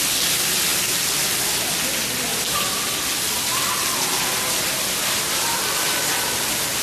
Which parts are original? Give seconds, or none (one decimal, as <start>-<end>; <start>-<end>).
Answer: 0.0-6.8